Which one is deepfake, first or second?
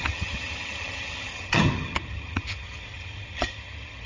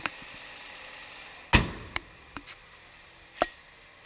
first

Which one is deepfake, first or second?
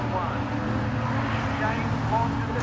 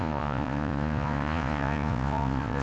second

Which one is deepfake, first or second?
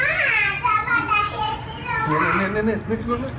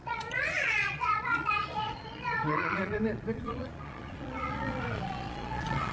second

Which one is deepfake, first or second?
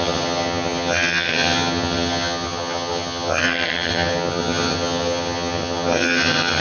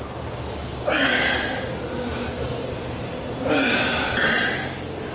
first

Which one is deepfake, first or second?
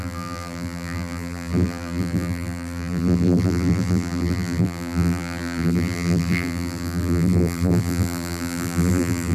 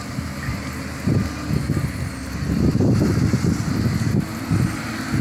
first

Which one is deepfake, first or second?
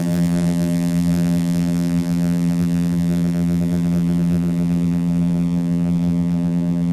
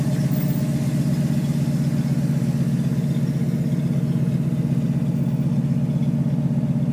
first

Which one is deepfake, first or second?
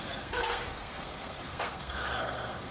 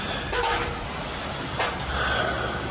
first